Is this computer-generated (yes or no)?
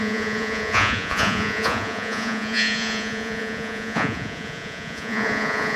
yes